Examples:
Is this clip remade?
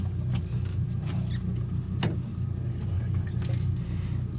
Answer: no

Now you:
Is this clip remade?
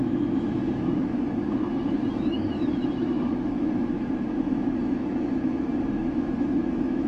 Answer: yes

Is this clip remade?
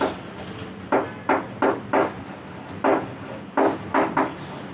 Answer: no